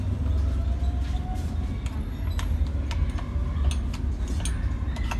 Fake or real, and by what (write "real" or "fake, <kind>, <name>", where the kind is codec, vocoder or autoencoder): real